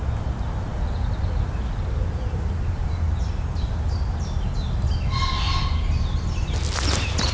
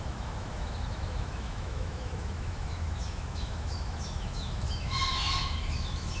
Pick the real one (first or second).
first